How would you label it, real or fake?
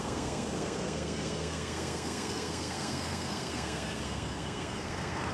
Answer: fake